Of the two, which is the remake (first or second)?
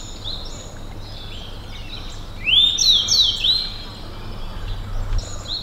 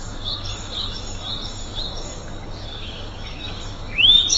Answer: second